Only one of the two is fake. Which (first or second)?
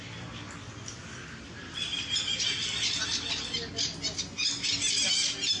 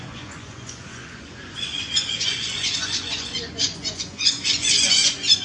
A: second